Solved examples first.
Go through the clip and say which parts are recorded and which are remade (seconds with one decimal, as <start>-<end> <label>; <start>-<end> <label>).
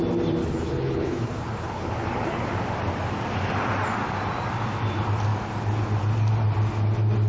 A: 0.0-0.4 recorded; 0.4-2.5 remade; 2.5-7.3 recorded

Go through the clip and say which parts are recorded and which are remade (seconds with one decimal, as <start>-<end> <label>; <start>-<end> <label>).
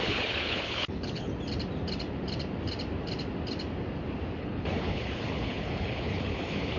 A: 0.0-1.3 remade; 1.3-4.4 recorded; 4.4-6.8 remade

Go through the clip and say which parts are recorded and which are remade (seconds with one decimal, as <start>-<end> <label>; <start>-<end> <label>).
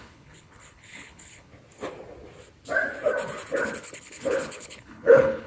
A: 0.0-1.5 remade; 1.5-3.6 recorded; 3.6-5.5 remade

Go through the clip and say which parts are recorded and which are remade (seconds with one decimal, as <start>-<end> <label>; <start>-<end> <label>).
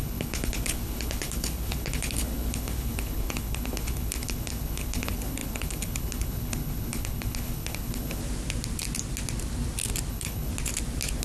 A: 0.0-8.2 remade; 8.2-10.1 recorded; 10.1-10.5 remade; 10.5-11.2 recorded